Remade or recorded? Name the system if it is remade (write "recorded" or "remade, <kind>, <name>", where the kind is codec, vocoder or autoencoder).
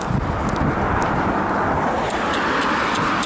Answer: recorded